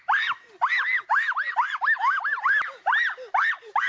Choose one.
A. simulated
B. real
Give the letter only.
B